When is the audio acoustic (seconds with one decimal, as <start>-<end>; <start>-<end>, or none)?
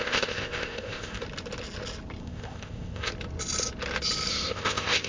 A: 1.2-2.2; 3.1-4.3